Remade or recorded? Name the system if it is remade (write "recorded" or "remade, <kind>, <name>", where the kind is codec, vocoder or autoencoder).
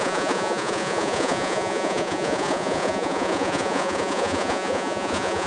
remade, vocoder, Vocos